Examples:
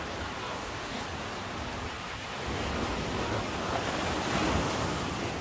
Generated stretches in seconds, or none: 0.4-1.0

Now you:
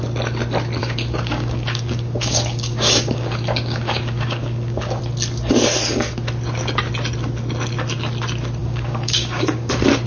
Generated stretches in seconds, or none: 0.8-5.0; 8.6-9.7

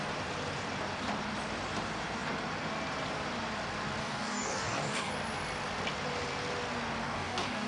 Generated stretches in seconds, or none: 4.0-5.1; 7.0-7.7